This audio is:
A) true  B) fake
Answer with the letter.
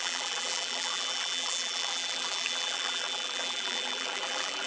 B